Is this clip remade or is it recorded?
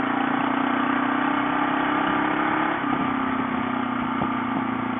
recorded